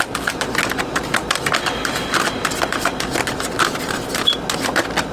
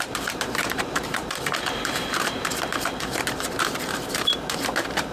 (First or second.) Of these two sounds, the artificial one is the second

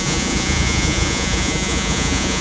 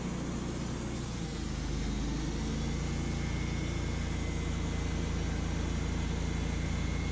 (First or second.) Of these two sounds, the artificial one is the first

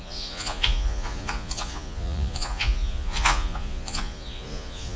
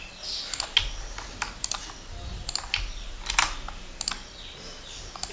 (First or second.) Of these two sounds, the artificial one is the first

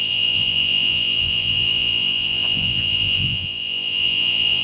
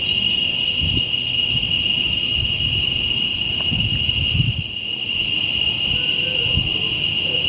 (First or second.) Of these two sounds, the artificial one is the first